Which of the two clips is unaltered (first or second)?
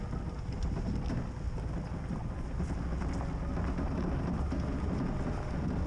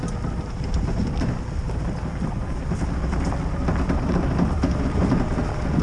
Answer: first